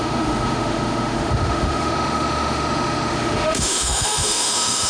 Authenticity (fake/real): fake